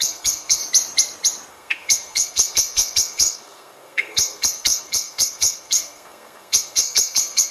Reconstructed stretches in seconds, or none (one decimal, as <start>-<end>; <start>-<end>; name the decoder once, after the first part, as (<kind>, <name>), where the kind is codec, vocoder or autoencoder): 0.0-0.6 (codec, SNAC); 1.5-7.5

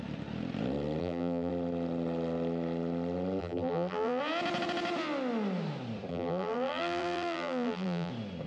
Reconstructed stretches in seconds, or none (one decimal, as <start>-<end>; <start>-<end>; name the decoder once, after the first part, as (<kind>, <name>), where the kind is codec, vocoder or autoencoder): 1.0-1.5 (vocoder, BigVGAN v2); 3.4-4.2; 6.1-8.1

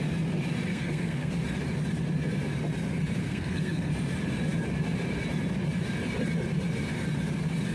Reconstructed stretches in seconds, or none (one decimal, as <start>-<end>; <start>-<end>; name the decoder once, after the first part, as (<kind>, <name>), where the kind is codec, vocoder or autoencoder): 0.7-1.3 (codec, SNAC); 3.2-3.9

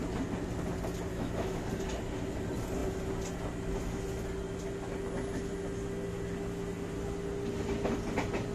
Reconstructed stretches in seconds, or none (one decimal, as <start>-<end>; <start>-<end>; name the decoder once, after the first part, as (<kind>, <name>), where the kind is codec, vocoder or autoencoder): 1.1-1.7 (autoencoder, DAC-VAE)

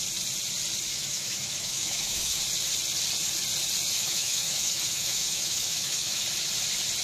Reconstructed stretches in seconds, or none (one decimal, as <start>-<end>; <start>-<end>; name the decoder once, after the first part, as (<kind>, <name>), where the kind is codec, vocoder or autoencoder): 0.9-2.4 (autoencoder, DAC-VAE); 4.0-6.2

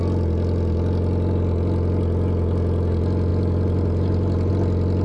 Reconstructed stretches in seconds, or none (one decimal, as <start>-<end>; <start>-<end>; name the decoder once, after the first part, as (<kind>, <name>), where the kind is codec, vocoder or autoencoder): 3.3-4.5 (vocoder, BigVGAN v2)